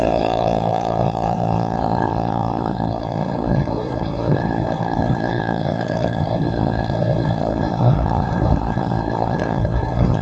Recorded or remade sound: remade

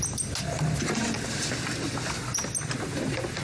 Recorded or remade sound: recorded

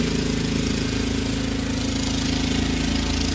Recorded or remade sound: recorded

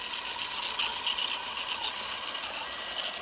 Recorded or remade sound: recorded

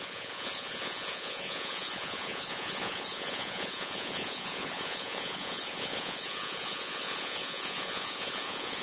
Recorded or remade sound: remade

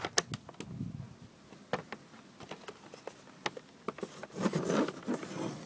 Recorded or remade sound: recorded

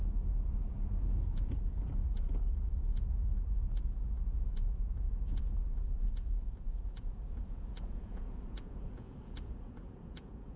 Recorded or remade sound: remade